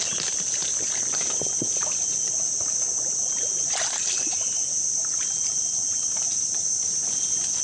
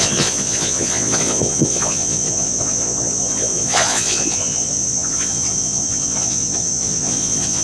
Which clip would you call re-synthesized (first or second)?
second